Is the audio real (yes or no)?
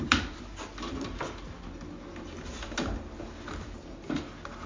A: yes